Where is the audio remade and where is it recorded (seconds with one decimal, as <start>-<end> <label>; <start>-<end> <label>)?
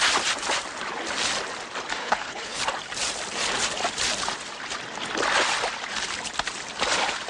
0.0-2.0 recorded; 2.0-2.6 remade; 2.6-7.3 recorded